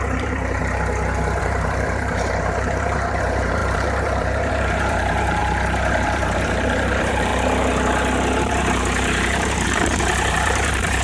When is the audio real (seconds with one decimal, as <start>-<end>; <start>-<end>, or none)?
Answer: 0.6-1.4; 5.4-5.9; 7.3-8.4